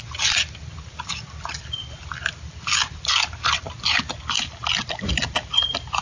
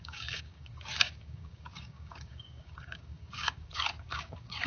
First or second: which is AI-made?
second